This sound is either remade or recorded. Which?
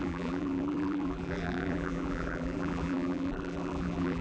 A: remade